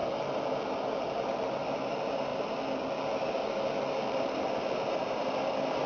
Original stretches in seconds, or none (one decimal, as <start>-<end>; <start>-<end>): 0.0-0.9